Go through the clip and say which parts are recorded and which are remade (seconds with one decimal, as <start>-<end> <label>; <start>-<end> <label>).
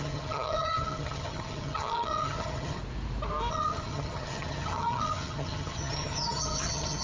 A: 0.0-2.8 remade; 2.8-3.5 recorded; 3.5-7.0 remade